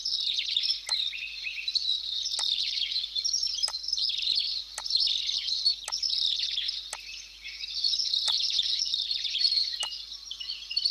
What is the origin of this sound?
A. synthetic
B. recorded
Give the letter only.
B